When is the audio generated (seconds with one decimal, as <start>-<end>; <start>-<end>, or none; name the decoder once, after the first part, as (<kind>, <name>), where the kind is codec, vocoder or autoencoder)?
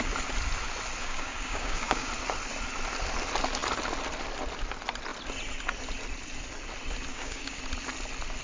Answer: 1.0-2.1 (codec, DAC); 7.1-7.6